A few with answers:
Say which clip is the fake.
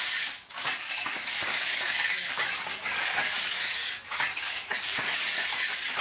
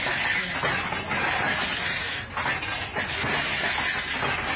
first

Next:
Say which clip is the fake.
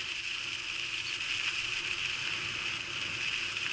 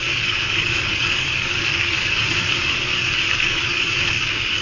second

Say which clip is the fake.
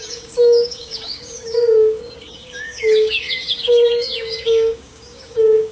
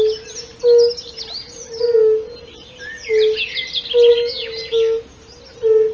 first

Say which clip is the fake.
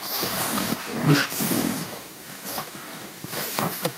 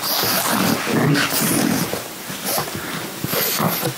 first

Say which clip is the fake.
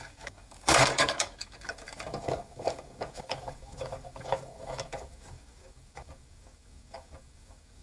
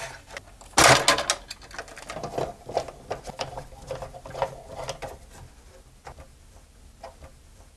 first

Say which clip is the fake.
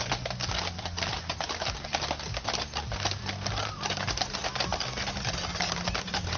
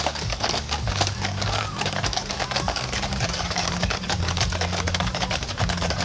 second